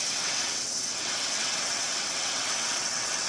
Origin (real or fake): fake